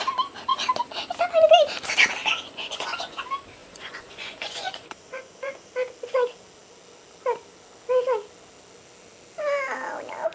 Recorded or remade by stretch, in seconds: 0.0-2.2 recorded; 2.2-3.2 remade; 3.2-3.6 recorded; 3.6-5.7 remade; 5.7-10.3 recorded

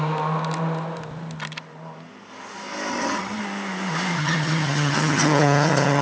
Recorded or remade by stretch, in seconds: 0.0-2.9 recorded; 2.9-3.4 remade; 3.4-4.1 recorded; 4.1-6.0 remade

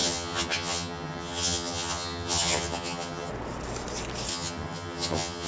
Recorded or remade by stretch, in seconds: 0.0-3.3 remade; 3.3-4.3 recorded; 4.3-5.5 remade